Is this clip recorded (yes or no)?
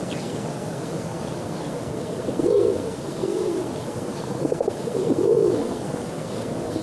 no